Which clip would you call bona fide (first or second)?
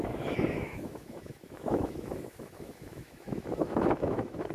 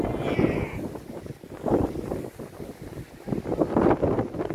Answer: second